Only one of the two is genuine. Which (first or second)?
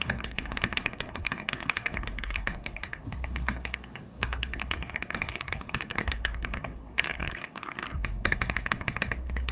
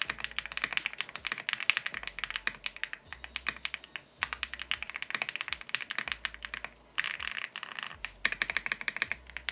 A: second